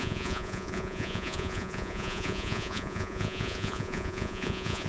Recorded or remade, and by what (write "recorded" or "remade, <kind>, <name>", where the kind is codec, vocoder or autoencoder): remade, vocoder, Vocos